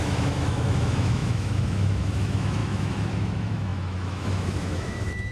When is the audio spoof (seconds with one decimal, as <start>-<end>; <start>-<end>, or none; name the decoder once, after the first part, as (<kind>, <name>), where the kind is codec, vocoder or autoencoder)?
0.0-5.3 (autoencoder, DAC-VAE)